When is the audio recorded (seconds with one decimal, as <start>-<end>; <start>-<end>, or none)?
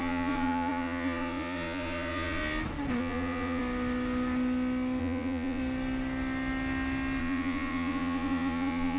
2.4-3.0; 3.6-5.0; 5.6-7.2